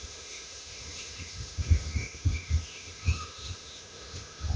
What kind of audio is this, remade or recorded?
remade